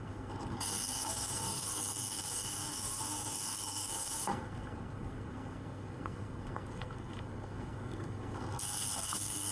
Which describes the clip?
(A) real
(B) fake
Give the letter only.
B